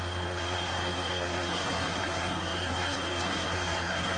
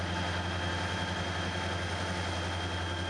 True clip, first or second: second